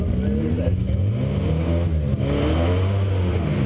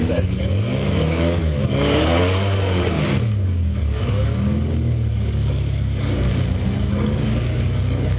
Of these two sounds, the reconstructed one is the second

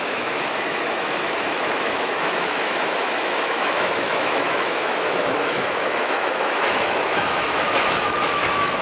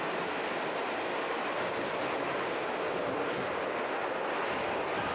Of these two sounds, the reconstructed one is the first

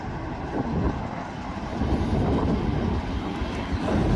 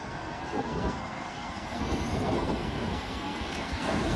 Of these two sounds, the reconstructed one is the second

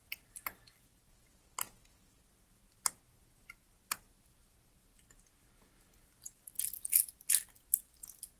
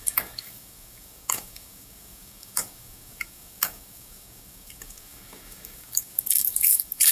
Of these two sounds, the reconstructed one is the second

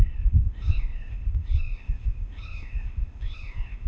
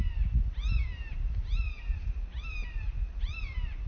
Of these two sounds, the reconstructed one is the first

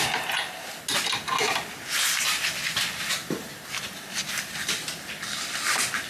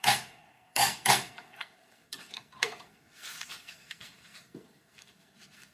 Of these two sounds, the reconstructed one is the second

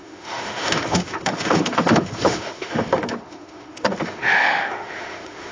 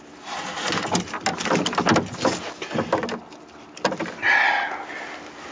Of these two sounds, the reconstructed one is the first